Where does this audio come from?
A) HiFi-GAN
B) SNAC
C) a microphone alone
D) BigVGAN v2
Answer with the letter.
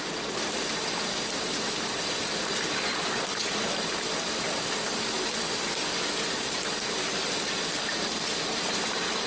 D